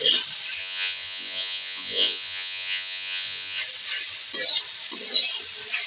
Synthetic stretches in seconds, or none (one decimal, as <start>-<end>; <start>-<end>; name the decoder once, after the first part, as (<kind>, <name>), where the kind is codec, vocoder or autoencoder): 0.6-3.6 (vocoder, Vocos)